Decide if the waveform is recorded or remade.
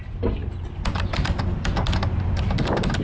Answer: recorded